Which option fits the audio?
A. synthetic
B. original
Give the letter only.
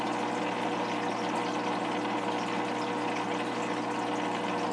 B